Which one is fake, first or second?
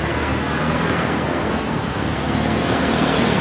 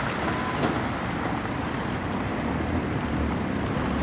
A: first